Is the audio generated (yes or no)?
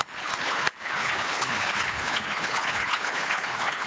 yes